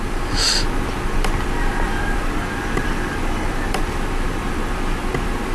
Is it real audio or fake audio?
fake